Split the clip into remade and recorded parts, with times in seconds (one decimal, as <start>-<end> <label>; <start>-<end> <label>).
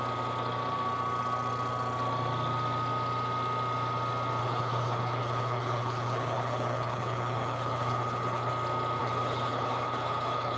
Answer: 0.0-4.4 recorded; 4.4-8.5 remade; 8.5-9.0 recorded; 9.0-10.6 remade